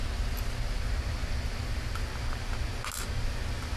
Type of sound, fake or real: real